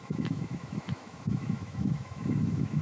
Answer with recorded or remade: remade